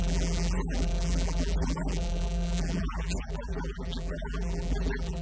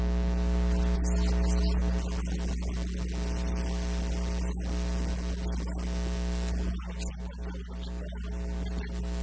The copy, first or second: first